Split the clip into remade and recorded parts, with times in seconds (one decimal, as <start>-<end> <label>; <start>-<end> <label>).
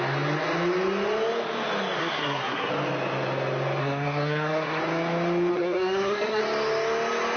0.0-2.0 recorded; 2.0-2.7 remade; 2.7-3.8 recorded; 3.8-4.8 remade; 4.8-5.5 recorded; 5.5-6.4 remade; 6.4-7.4 recorded